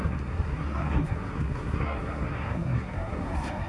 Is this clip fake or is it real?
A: fake